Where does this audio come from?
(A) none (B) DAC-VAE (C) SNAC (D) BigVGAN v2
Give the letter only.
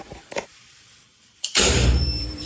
D